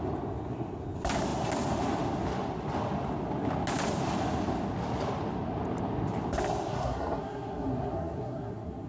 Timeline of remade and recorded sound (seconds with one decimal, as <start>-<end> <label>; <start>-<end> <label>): 0.0-6.7 recorded; 6.7-8.9 remade